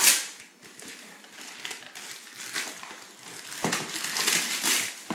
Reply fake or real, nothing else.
real